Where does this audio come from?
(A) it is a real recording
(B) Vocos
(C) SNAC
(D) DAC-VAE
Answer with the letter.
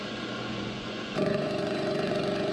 B